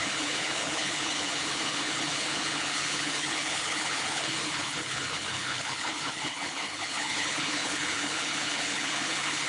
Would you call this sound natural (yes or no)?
no